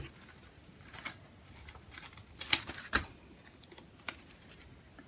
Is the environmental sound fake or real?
real